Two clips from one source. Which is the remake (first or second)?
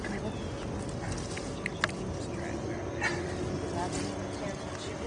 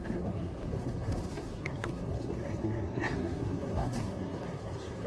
second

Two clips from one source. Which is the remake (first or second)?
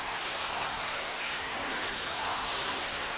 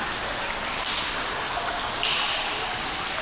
first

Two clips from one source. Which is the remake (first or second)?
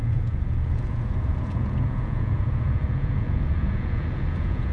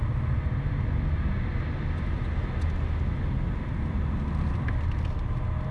first